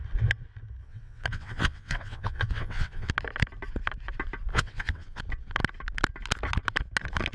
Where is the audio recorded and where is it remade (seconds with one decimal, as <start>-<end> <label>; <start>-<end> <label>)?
0.0-0.8 recorded; 0.8-3.1 remade; 3.1-4.5 recorded; 4.5-5.2 remade; 5.2-7.3 recorded